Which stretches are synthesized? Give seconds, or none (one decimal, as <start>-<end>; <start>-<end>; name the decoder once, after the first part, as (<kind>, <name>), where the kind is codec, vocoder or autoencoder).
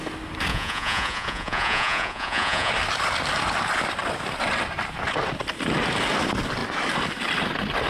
0.5-2.7 (vocoder, Vocos)